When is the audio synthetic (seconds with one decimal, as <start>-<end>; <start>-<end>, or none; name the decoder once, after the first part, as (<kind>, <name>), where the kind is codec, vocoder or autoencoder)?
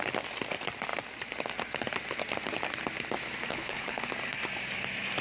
3.5-4.1 (codec, HILCodec)